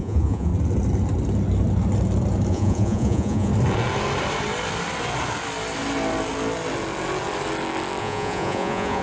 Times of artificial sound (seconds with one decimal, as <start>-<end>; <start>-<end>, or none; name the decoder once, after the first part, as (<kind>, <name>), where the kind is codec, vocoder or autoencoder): 0.0-0.5 (vocoder, Vocos); 2.5-3.5; 8.0-9.0